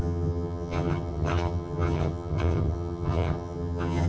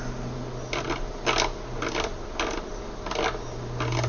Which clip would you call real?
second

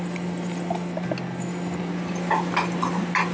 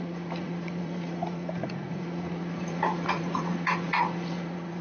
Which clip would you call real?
first